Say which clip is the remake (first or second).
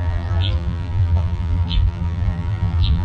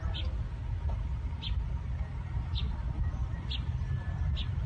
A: first